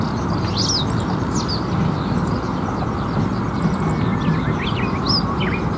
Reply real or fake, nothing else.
real